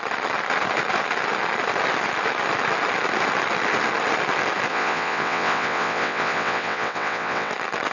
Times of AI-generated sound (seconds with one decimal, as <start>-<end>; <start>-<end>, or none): 4.7-7.5